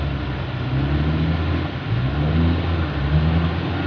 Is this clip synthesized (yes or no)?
no